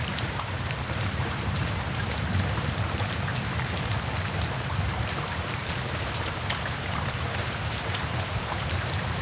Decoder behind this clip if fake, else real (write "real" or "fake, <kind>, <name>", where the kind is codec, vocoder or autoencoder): fake, vocoder, BigVGAN v2